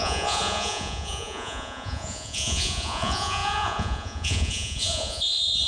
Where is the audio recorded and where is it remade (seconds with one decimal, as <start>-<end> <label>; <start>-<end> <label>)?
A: 0.0-5.7 remade